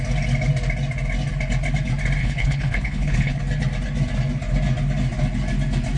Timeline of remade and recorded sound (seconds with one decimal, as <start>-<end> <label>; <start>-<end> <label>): 0.0-2.2 recorded; 2.2-3.4 remade; 3.4-6.0 recorded